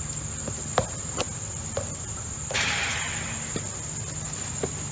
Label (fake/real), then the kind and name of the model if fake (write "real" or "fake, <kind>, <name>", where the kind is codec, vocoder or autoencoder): real